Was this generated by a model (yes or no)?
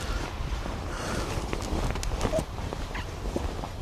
no